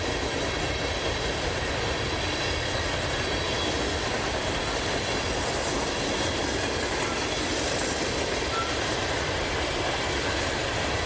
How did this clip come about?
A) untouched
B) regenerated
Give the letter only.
A